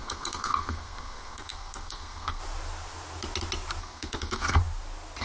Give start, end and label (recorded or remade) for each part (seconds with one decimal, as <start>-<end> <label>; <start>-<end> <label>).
0.0-2.4 remade; 2.4-3.8 recorded; 3.8-4.6 remade; 4.6-5.2 recorded